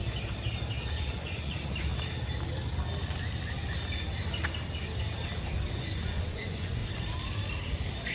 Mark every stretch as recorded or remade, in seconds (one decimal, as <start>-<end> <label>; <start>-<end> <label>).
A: 0.0-0.9 recorded; 0.9-1.9 remade; 1.9-5.7 recorded; 5.7-6.8 remade; 6.8-8.1 recorded